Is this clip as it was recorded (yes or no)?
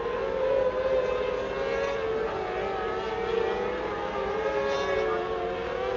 yes